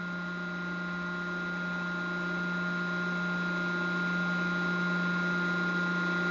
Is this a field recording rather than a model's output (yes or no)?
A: yes